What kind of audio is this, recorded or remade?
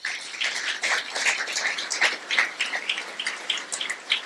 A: remade